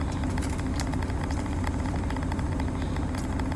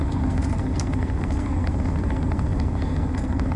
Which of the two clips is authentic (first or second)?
first